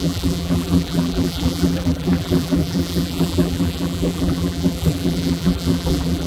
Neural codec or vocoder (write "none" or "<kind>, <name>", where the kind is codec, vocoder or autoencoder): vocoder, BigVGAN v2